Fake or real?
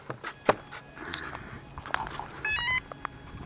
real